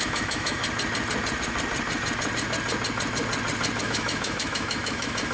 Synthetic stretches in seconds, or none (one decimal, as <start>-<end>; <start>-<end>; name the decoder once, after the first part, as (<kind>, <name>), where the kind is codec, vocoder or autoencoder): 0.0-0.6 (autoencoder, DAC-VAE); 3.8-5.3